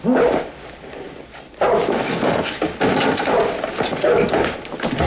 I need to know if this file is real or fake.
real